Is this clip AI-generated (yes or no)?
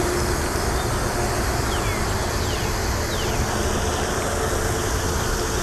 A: no